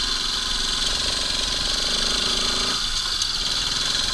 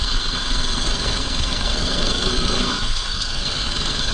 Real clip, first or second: first